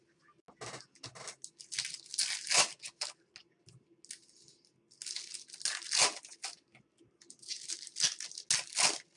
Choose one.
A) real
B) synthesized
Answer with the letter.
A